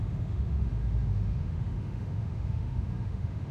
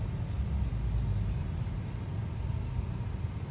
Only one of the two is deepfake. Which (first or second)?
first